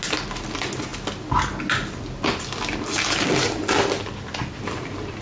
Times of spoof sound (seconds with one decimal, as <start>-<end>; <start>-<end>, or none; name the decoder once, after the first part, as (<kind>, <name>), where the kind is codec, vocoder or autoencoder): none